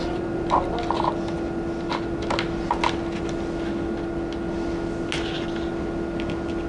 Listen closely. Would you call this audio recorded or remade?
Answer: recorded